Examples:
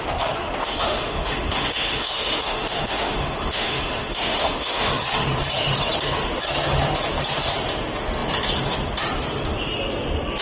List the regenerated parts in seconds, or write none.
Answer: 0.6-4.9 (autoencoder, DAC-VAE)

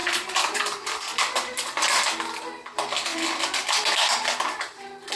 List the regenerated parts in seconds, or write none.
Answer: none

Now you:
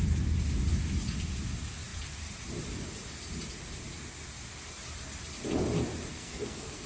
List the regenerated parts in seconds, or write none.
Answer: 6.1-6.9 (codec, SNAC)

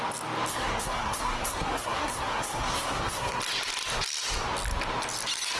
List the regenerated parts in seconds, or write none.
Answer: 0.5-3.4 (codec, SNAC)

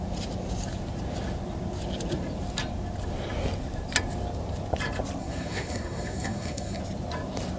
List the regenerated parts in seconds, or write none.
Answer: 5.2-6.8 (codec, SNAC)